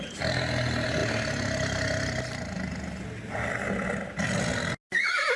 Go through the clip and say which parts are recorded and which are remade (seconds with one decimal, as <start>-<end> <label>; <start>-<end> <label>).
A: 0.0-5.4 recorded